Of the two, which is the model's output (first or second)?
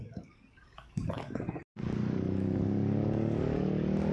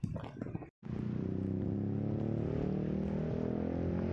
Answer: first